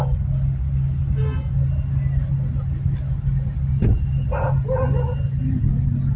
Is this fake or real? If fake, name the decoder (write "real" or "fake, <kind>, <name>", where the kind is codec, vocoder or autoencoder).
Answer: real